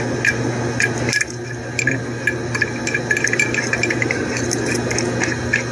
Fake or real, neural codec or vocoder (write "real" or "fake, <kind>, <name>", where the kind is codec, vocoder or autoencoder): real